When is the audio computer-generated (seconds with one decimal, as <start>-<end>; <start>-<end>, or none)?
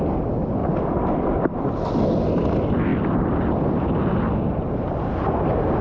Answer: none